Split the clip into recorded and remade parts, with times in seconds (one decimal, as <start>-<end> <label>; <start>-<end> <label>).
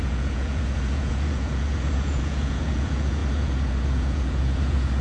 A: 0.0-5.0 remade